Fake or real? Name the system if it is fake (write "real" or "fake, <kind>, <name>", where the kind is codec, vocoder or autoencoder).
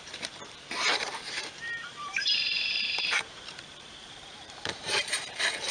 fake, vocoder, BigVGAN v2